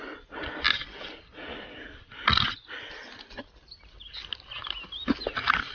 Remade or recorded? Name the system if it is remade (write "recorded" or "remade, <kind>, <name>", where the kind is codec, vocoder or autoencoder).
recorded